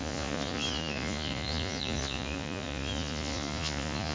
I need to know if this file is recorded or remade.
remade